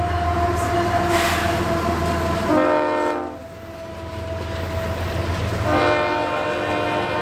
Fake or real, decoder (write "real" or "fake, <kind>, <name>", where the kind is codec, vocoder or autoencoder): real